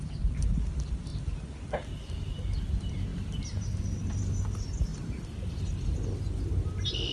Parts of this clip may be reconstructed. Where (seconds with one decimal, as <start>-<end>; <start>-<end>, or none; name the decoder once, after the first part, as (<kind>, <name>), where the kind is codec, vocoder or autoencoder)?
none